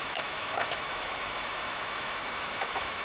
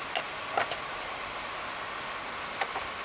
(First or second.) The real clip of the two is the second